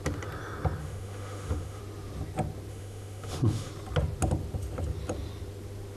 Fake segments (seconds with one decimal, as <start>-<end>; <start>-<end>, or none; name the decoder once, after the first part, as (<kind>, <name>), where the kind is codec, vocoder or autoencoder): 0.8-1.8 (autoencoder, DAC-VAE); 2.7-3.7